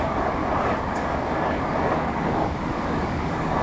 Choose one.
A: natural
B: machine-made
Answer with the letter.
B